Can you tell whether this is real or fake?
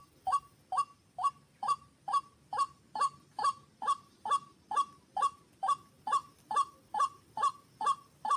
real